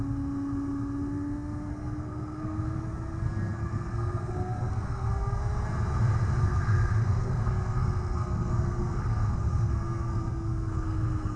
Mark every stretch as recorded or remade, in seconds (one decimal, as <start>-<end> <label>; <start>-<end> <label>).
0.0-1.7 recorded; 1.7-5.4 remade; 5.4-6.4 recorded; 6.4-11.4 remade